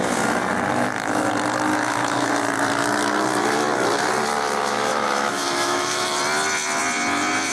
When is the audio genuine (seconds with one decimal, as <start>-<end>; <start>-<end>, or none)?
0.0-1.7; 2.3-4.9; 6.2-7.5